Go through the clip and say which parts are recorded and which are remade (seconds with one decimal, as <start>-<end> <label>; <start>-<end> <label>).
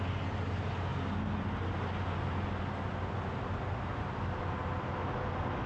0.0-5.7 recorded